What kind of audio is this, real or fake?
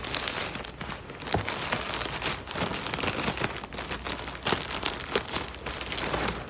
real